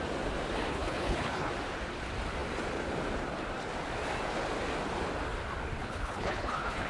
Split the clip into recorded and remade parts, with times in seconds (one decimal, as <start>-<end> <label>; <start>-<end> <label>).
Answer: 0.0-0.7 recorded; 0.7-1.5 remade; 1.5-5.8 recorded; 5.8-6.9 remade